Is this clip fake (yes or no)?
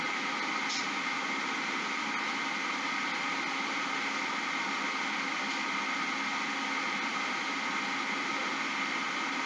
no